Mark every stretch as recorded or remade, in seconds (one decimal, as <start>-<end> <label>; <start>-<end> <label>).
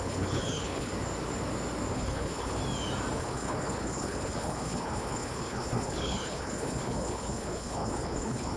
0.0-0.9 remade; 0.9-1.9 recorded; 1.9-2.6 remade; 2.6-3.2 recorded; 3.2-8.6 remade